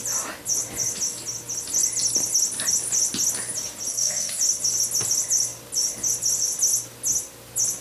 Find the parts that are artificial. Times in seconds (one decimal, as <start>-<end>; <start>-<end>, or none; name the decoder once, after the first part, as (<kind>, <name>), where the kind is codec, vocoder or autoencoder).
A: 3.9-4.4 (codec, SNAC)